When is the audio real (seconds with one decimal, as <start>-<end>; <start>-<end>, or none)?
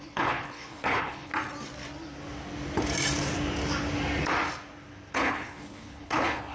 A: 1.3-5.1